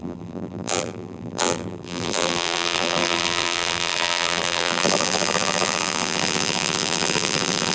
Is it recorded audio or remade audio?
remade